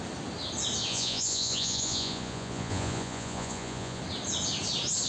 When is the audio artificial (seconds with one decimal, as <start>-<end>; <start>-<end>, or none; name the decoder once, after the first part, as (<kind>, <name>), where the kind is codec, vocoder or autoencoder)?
0.9-4.0 (vocoder, Vocos)